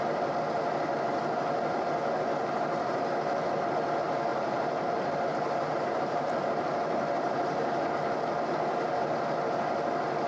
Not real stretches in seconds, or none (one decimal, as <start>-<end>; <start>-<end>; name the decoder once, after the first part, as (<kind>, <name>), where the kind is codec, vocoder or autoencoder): 4.3-7.8 (vocoder, BigVGAN v2)